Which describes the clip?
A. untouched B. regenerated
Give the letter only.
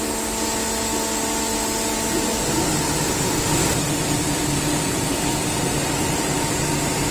A